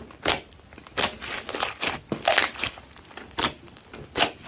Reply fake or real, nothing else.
real